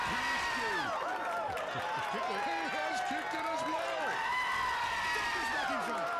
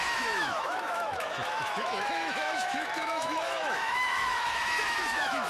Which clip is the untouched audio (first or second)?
first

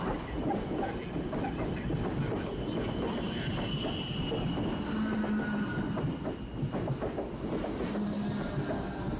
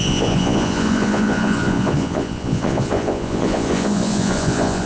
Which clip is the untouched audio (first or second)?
first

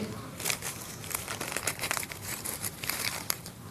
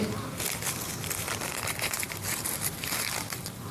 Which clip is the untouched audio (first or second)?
second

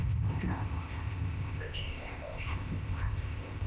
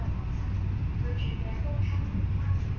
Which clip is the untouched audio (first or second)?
second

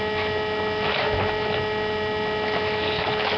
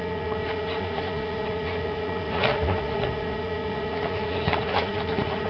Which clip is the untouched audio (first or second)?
first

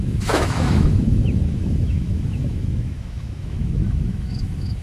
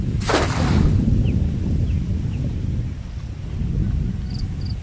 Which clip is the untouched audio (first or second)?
second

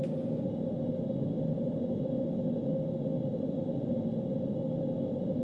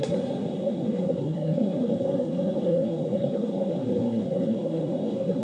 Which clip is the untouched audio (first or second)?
first